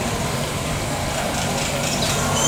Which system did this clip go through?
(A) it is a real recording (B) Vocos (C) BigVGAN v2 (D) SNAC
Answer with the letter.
C